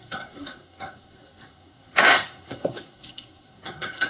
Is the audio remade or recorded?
remade